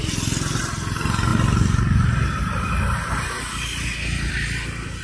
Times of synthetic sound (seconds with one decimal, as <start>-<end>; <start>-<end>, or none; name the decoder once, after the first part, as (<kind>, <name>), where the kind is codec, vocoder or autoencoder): none